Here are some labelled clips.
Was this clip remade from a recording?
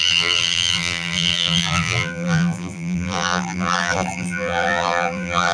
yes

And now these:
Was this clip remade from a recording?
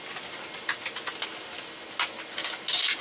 no